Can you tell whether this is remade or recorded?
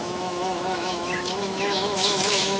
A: remade